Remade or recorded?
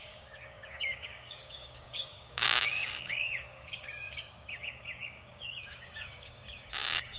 remade